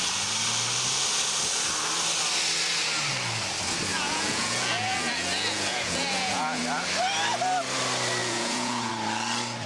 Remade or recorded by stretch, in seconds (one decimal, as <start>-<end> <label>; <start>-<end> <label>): 0.0-3.9 recorded; 3.9-6.6 remade; 6.6-8.2 recorded; 8.2-8.9 remade; 8.9-9.7 recorded